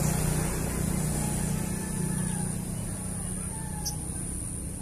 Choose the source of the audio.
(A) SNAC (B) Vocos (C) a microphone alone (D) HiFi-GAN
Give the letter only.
C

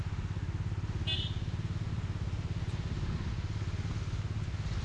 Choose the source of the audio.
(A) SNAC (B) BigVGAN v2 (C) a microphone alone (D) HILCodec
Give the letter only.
C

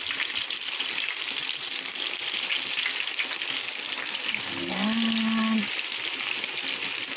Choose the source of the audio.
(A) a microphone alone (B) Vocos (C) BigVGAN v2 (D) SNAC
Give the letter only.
A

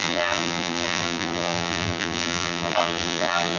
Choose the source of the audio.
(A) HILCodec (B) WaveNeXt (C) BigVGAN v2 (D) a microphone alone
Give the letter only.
C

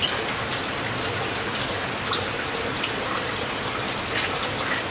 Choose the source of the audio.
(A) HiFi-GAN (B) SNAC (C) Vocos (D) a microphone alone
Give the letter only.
D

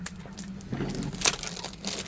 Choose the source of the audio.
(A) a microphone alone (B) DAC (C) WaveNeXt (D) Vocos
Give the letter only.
A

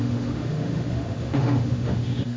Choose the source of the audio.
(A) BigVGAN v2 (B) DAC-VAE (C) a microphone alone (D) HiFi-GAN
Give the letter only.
B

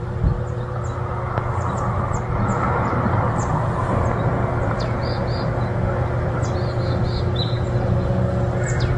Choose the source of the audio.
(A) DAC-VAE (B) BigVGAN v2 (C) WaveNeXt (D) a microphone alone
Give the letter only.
D